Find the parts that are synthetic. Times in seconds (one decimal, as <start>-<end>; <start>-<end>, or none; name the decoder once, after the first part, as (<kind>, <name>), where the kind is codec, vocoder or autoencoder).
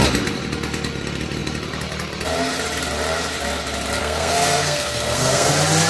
4.0-5.5 (codec, SNAC)